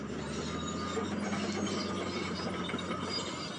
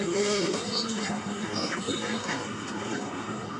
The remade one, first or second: second